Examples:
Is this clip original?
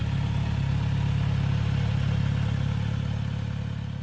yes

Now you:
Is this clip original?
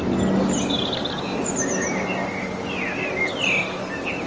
yes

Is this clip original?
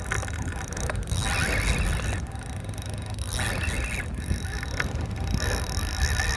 yes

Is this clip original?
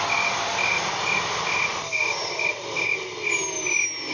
yes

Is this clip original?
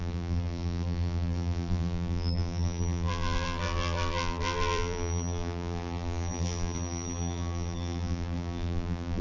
no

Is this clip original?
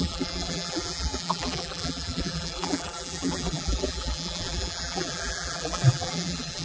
no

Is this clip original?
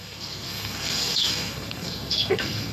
no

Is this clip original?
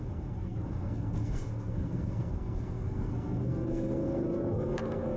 no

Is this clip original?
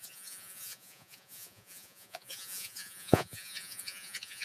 no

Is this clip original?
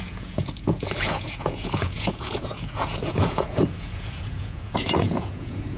no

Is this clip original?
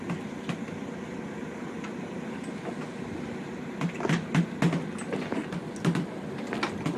yes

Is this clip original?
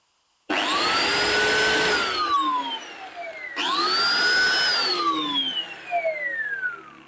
yes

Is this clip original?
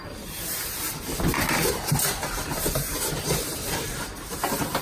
no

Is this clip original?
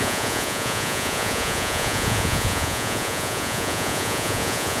no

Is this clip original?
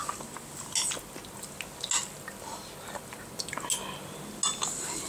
yes